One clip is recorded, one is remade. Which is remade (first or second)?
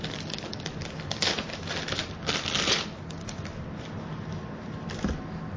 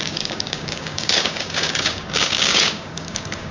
second